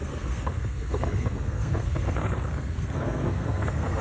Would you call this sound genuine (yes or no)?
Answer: no